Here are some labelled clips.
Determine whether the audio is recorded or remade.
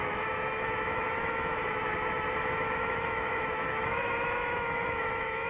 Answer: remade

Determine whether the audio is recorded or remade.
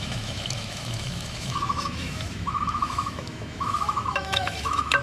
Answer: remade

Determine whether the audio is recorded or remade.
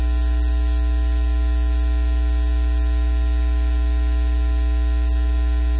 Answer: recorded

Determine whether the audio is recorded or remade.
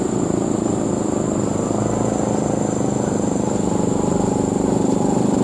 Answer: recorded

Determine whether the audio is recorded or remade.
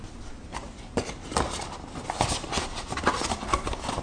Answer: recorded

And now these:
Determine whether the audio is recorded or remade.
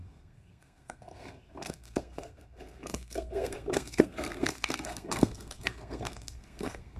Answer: remade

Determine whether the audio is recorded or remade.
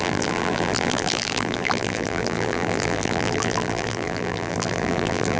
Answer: remade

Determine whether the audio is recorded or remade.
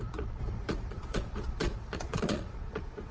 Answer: remade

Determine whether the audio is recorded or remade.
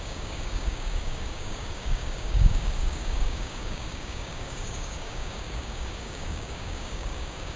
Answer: remade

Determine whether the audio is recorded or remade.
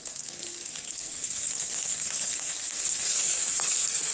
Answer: remade